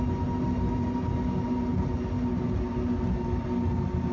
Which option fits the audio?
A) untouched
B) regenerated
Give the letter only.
A